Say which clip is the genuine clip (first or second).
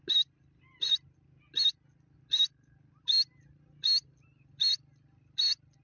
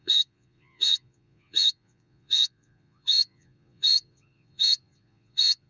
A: first